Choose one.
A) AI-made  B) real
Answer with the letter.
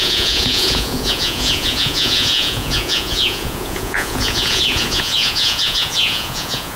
A